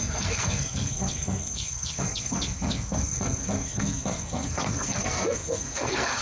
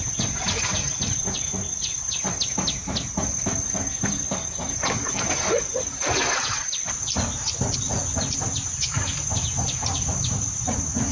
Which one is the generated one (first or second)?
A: first